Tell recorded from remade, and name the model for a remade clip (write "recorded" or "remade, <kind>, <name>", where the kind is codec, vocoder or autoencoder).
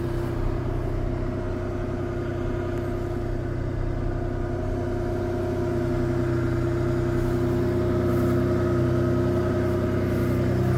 recorded